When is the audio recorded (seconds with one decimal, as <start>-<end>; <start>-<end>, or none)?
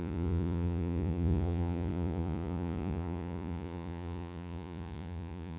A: none